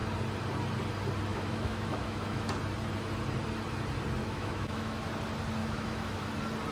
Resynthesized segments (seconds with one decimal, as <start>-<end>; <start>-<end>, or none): 1.3-2.5; 4.2-5.0; 5.6-6.3